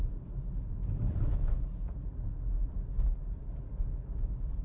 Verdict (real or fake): fake